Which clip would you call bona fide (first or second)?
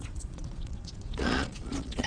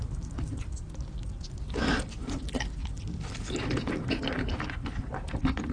second